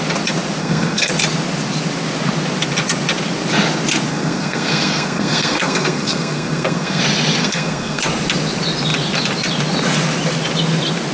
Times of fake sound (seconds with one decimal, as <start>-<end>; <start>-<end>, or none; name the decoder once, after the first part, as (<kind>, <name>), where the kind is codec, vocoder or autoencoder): 0.6-1.1 (codec, SNAC); 4.1-7.0; 7.4-8.0